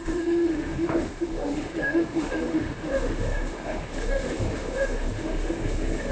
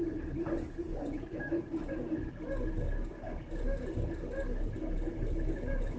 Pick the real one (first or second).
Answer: second